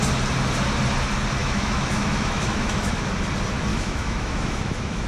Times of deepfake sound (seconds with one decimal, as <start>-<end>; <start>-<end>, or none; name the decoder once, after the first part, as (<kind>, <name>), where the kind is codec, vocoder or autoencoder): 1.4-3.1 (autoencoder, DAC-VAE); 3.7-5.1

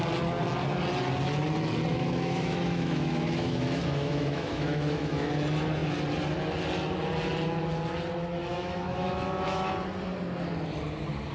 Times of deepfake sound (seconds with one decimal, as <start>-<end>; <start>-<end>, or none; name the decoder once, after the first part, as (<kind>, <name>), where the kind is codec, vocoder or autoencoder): 1.9-5.3 (autoencoder, DAC-VAE); 8.4-9.7

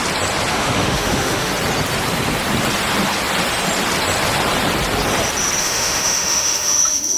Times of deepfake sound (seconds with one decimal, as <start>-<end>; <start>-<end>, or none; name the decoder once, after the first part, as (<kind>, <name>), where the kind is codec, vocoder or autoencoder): 0.5-1.5 (autoencoder, DAC-VAE); 5.6-7.2

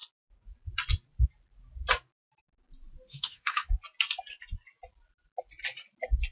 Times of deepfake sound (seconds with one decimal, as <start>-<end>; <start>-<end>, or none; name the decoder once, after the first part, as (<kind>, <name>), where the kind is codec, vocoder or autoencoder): 3.1-3.7 (autoencoder, DAC-VAE)

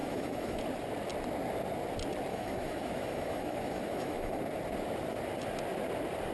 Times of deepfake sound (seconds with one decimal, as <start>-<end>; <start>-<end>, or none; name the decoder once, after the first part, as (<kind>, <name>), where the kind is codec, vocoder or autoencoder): 0.0-0.6 (autoencoder, DAC-VAE); 2.3-4.4

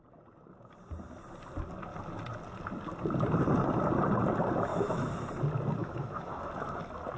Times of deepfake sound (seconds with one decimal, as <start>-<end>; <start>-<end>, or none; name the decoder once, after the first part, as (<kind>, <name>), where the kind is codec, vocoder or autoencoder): 4.7-5.3 (autoencoder, DAC-VAE); 5.8-6.5

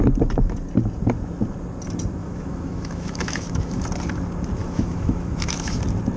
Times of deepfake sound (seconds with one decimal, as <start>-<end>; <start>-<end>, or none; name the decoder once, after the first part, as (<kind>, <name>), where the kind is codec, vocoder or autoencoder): 2.2-3.8 (autoencoder, DAC-VAE); 4.6-5.8